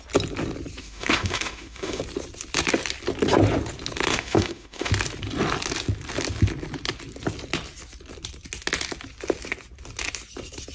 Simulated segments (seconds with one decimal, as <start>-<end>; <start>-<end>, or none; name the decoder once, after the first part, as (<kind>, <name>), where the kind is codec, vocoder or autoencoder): 0.8-2.0 (autoencoder, DAC-VAE); 4.1-4.9